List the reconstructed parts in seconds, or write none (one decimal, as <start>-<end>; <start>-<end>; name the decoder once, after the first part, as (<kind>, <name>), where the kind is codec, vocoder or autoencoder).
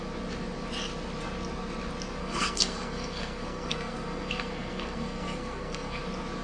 2.2-6.0 (codec, SNAC)